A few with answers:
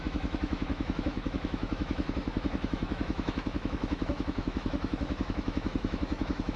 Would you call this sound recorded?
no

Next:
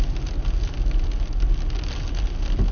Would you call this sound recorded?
yes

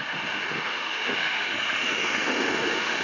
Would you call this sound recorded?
no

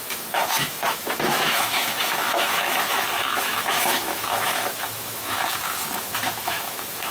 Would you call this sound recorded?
no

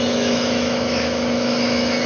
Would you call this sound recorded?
no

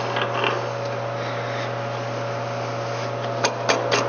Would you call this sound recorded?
yes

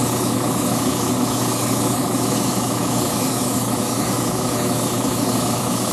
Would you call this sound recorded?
no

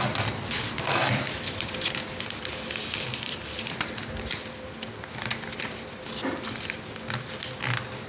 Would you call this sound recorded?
yes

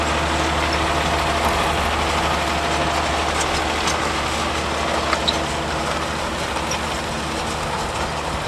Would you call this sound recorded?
yes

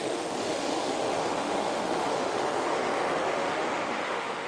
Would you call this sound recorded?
no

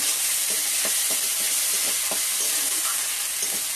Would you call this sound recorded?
yes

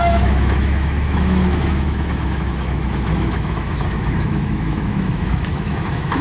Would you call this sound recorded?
no